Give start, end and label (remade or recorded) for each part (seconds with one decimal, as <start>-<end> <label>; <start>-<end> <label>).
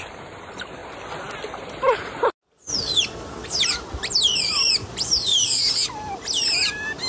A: 0.0-0.8 remade; 0.8-3.6 recorded; 3.6-7.1 remade